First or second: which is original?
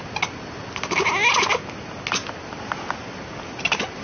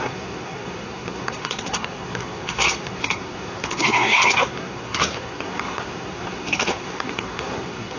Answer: first